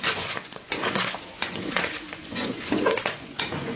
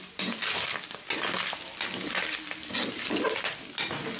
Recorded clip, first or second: second